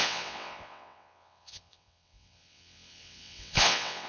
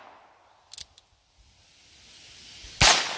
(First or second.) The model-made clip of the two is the first